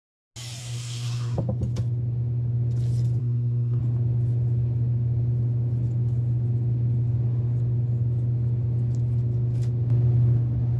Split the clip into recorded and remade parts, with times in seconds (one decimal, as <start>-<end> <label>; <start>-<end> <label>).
0.0-0.6 recorded; 0.6-1.4 remade; 1.4-3.2 recorded; 3.2-3.8 remade; 3.8-10.8 recorded